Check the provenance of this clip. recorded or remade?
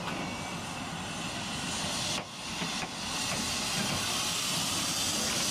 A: recorded